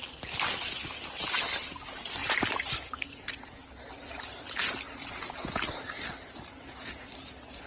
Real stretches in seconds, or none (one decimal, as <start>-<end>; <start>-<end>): 0.0-7.7